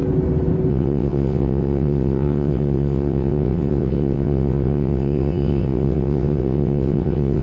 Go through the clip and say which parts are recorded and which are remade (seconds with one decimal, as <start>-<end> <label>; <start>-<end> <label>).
0.0-0.7 recorded; 0.7-7.4 remade